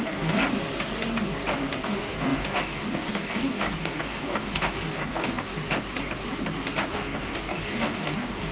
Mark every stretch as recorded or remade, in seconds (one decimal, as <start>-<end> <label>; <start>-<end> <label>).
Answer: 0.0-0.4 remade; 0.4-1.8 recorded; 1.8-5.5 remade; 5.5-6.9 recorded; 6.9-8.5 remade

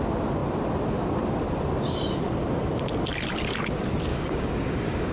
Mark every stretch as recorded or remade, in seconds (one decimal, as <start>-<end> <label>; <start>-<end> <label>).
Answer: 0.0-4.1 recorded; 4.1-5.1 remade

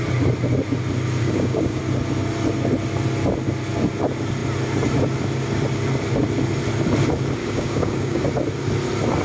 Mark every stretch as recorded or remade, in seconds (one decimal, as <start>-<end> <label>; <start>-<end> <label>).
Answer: 0.0-1.2 recorded; 1.2-1.8 remade; 1.8-7.4 recorded; 7.4-8.3 remade; 8.3-9.2 recorded

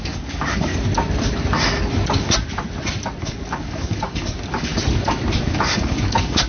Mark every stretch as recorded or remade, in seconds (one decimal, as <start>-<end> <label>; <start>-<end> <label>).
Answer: 0.0-0.7 remade; 0.7-3.2 recorded; 3.2-4.7 remade; 4.7-5.4 recorded; 5.4-6.5 remade

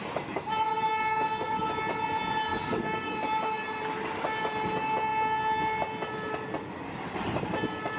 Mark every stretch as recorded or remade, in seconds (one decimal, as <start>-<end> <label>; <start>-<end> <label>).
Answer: 0.0-0.7 recorded; 0.7-1.7 remade; 1.7-2.5 recorded; 2.5-3.1 remade; 3.1-8.0 recorded

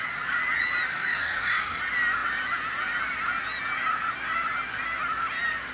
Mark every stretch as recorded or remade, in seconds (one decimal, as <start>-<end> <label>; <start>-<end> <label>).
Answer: 0.0-0.9 recorded; 0.9-1.8 remade; 1.8-5.7 recorded

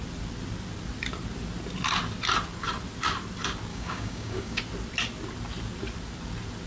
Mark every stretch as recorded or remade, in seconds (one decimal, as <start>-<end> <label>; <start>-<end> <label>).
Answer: 0.0-3.7 recorded; 3.7-4.6 remade; 4.6-6.7 recorded

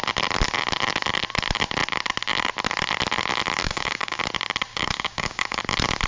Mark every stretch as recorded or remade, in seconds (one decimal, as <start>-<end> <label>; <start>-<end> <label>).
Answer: 0.0-3.6 recorded; 3.6-4.2 remade; 4.2-4.7 recorded; 4.7-5.6 remade; 5.6-6.1 recorded